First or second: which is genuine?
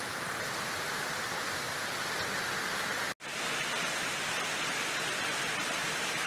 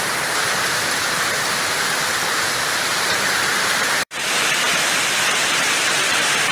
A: first